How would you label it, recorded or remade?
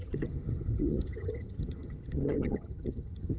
remade